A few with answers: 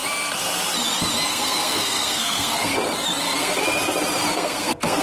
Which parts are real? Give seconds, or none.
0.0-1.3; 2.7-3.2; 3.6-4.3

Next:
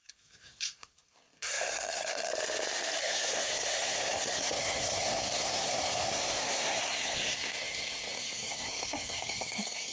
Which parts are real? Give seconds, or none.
2.3-3.0